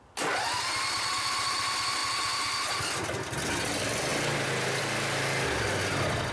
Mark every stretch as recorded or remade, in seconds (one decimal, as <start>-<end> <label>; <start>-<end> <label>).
0.0-6.3 recorded